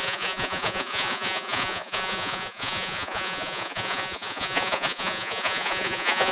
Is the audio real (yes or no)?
no